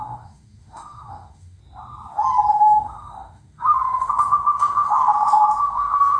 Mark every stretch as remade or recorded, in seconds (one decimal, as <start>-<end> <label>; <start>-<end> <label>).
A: 0.0-1.6 remade; 1.6-2.5 recorded; 2.5-6.2 remade

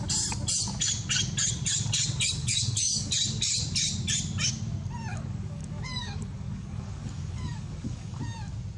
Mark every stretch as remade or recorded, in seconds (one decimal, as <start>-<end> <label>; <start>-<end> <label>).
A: 0.0-2.4 recorded; 2.4-3.1 remade; 3.1-5.1 recorded; 5.1-8.2 remade; 8.2-8.8 recorded